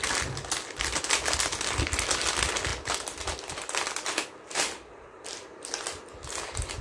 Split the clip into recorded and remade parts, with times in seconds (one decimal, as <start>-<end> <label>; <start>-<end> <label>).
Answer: 0.0-6.8 recorded